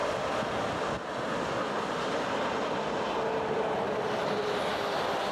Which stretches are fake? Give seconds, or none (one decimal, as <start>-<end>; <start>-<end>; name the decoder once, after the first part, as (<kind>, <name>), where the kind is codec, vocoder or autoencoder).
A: none

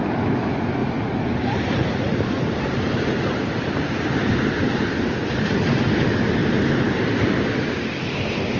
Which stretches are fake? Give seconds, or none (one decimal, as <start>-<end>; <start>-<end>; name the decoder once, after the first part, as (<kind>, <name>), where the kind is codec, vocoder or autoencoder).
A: 0.8-5.6 (vocoder, BigVGAN v2)

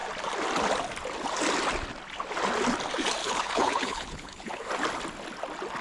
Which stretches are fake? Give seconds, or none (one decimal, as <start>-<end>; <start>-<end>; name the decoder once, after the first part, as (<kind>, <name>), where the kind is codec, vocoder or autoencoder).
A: 3.2-4.7 (codec, HILCodec)

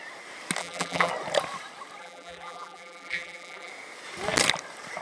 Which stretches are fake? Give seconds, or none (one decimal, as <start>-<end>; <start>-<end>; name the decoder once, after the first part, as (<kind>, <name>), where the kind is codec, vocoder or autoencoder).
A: 0.6-1.1 (vocoder, BigVGAN v2); 2.0-3.7

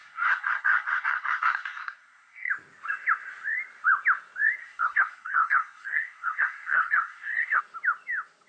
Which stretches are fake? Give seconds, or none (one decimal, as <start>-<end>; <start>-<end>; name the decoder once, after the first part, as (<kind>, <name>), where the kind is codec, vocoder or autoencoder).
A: 0.0-2.5 (codec, SNAC); 4.6-7.6

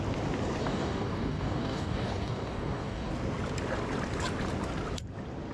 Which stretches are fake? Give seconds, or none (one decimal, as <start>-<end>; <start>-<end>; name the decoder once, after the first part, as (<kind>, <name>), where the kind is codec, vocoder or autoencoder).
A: 0.6-3.1 (codec, DAC)

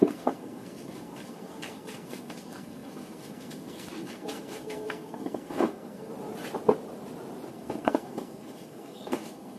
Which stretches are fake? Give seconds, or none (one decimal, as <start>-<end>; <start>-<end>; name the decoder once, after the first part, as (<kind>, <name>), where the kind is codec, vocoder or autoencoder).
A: 0.0-6.1 (codec, SNAC); 7.5-9.6